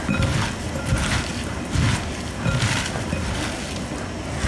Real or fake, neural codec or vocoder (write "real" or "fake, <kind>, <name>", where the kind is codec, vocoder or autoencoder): real